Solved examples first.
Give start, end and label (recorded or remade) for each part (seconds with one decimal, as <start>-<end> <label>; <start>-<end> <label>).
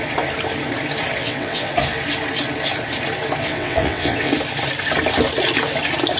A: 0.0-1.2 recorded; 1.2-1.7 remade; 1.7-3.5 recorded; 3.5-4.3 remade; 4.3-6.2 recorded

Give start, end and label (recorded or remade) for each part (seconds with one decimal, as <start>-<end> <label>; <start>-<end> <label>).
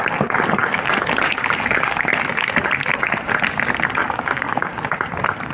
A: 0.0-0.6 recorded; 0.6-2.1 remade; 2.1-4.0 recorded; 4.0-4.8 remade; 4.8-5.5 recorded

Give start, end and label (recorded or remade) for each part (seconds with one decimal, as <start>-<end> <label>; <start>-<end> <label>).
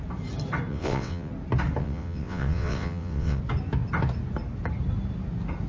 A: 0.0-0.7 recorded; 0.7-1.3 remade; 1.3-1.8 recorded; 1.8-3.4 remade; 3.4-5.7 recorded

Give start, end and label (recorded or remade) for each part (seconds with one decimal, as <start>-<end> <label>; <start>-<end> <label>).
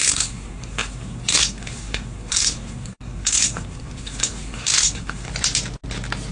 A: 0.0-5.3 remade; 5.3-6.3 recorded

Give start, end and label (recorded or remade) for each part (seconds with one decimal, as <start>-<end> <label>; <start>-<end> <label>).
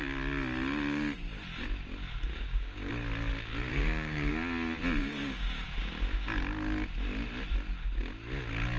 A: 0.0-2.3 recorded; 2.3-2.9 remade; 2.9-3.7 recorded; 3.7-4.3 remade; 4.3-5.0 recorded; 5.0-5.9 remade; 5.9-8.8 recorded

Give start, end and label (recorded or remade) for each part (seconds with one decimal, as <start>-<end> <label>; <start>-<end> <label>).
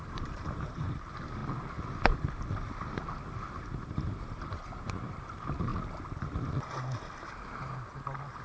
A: 0.0-1.4 remade; 1.4-3.6 recorded; 3.6-5.7 remade; 5.7-8.4 recorded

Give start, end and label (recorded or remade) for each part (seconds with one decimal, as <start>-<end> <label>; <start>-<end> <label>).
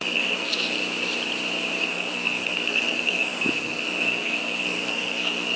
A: 0.0-0.8 remade; 0.8-1.8 recorded; 1.8-5.6 remade